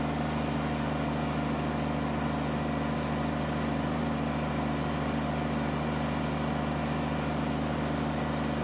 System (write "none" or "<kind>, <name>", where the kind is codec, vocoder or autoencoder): none